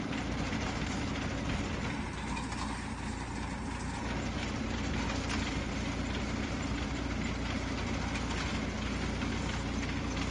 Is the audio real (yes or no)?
yes